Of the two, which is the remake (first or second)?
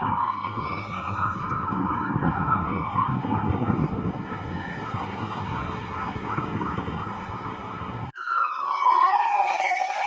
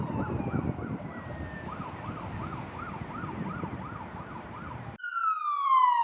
first